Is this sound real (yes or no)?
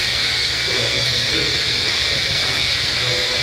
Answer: no